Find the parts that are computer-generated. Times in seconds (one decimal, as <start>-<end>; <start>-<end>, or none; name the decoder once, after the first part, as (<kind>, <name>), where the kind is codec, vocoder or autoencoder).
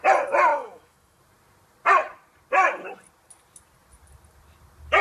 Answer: 0.5-1.2 (autoencoder, DAC-VAE)